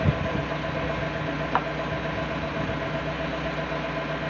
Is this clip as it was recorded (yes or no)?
yes